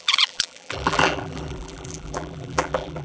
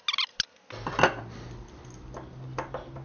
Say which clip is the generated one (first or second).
first